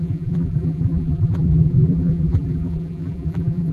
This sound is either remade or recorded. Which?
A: remade